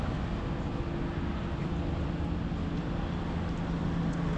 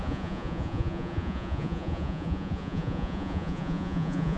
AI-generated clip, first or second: second